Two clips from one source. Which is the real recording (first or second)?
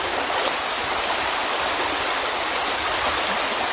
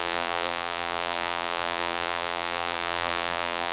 first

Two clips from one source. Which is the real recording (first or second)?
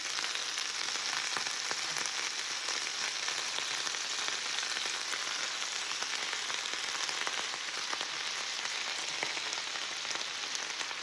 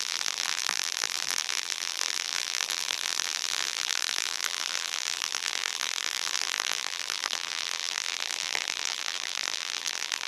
first